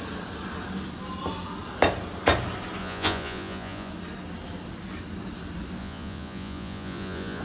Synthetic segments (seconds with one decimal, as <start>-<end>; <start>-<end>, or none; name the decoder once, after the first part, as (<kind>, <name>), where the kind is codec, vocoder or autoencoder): 2.8-3.9 (vocoder, Vocos); 5.8-7.4